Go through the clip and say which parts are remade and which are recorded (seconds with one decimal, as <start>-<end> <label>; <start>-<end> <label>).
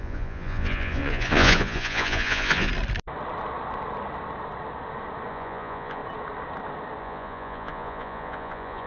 0.0-2.7 remade; 2.7-5.3 recorded; 5.3-6.0 remade; 6.0-7.0 recorded; 7.0-8.9 remade